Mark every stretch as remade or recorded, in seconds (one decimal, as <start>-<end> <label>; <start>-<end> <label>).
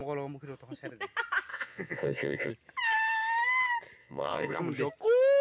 0.0-1.5 recorded; 1.5-2.5 remade; 2.5-4.0 recorded; 4.0-4.6 remade; 4.6-5.4 recorded